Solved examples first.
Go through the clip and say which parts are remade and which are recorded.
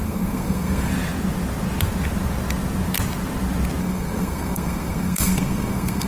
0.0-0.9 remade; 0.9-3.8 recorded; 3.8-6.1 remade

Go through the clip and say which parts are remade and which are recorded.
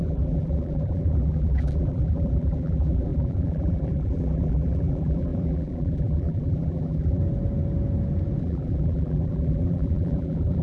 0.0-7.2 remade; 7.2-8.4 recorded; 8.4-10.6 remade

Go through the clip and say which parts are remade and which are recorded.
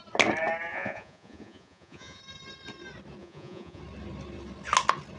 0.0-0.7 recorded; 0.7-2.2 remade; 2.2-3.2 recorded; 3.2-3.8 remade; 3.8-5.2 recorded